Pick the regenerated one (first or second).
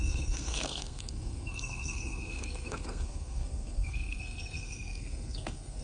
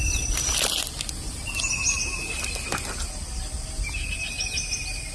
first